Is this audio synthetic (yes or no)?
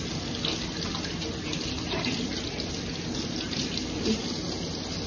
no